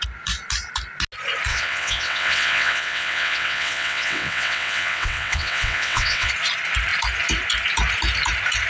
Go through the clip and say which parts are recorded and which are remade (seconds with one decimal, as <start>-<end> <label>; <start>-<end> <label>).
0.0-1.5 recorded; 1.5-6.3 remade; 6.3-8.7 recorded